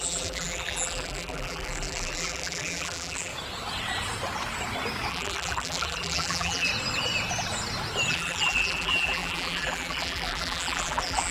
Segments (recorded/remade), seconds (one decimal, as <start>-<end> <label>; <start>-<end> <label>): 0.0-3.3 remade; 3.3-5.1 recorded; 5.1-6.7 remade; 6.7-8.1 recorded; 8.1-11.3 remade